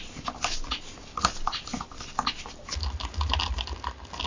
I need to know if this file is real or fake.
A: real